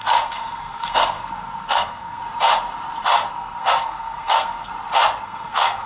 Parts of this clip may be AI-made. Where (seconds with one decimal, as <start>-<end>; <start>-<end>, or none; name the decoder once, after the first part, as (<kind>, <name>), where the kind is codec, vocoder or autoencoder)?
0.0-2.2 (codec, SNAC); 3.3-4.7; 5.2-5.9